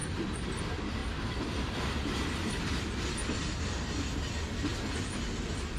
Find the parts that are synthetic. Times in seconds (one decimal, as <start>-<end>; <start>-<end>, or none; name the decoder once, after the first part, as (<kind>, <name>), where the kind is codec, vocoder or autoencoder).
0.0-3.2 (vocoder, BigVGAN v2); 3.7-5.8